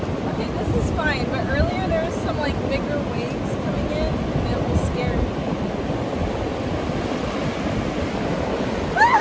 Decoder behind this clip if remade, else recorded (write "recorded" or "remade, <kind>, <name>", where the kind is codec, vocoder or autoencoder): recorded